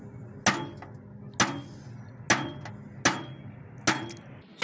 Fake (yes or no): no